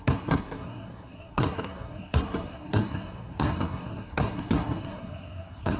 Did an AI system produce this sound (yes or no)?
yes